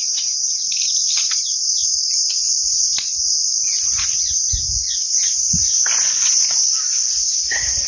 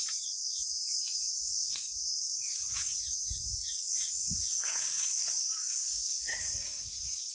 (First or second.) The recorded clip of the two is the first